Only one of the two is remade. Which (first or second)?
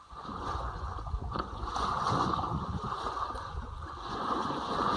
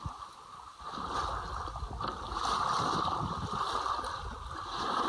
first